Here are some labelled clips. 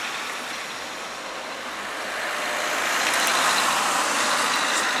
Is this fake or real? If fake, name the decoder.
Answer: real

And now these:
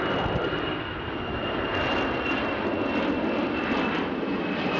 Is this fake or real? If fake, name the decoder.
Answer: real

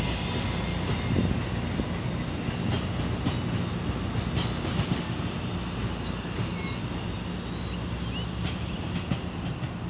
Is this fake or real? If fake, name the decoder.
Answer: real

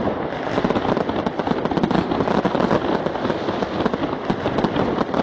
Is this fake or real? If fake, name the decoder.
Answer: real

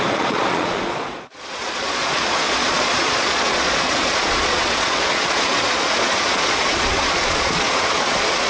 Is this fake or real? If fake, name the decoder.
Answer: fake, vocoder, Vocos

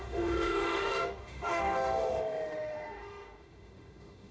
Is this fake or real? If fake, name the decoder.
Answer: fake, autoencoder, DAC-VAE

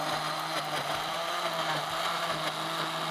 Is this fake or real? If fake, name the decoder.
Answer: real